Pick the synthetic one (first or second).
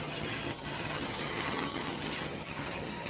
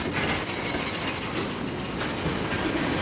first